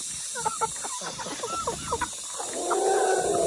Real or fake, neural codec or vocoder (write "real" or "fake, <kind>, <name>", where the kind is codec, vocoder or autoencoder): real